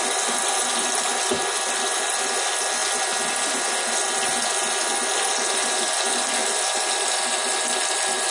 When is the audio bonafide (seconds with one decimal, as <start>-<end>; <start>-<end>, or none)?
0.0-8.3